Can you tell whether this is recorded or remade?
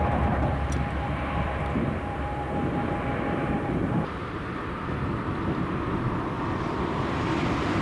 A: remade